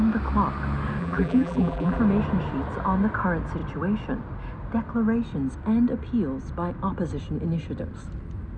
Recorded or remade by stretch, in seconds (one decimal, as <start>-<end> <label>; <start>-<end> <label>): 0.0-1.0 recorded; 1.0-2.0 remade; 2.0-8.6 recorded